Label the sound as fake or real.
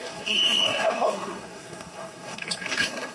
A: fake